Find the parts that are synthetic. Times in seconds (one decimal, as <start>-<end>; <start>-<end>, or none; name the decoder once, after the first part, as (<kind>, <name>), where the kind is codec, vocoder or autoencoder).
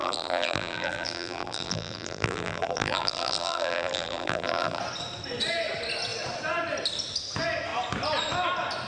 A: 0.0-4.8 (vocoder, BigVGAN v2)